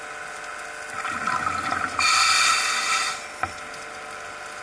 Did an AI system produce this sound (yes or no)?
no